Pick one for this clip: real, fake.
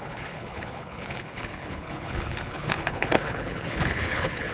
fake